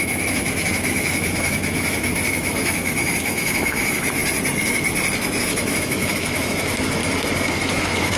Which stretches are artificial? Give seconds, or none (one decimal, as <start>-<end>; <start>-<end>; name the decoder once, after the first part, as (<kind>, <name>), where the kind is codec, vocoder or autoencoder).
0.0-4.2 (autoencoder, DAC-VAE); 5.4-7.0; 7.7-8.2